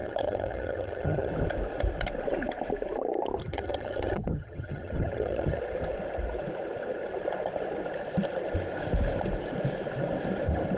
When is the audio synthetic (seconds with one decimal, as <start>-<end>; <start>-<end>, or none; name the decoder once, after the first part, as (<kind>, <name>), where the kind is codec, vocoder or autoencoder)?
0.0-1.3 (vocoder, HiFi-GAN); 3.4-5.6